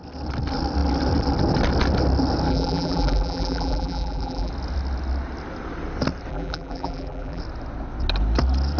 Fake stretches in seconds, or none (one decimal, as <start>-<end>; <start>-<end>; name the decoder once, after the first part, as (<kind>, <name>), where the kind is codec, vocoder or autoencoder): 2.5-4.5 (vocoder, BigVGAN v2); 6.3-7.4